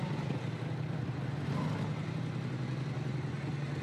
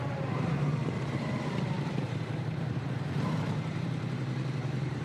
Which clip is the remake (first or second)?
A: second